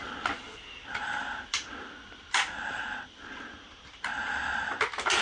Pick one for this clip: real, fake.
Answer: real